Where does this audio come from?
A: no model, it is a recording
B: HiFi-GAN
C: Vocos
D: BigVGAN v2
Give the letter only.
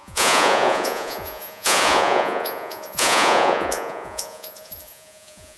C